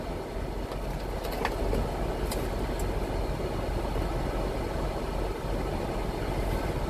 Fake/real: real